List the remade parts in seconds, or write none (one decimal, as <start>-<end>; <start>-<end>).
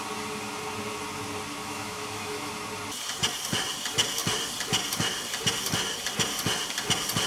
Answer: 1.6-2.5